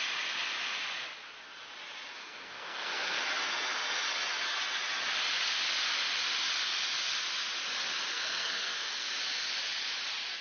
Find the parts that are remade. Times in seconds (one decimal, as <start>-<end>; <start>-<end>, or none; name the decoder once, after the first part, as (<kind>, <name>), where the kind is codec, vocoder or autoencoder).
2.2-3.2 (codec, SNAC); 8.1-9.1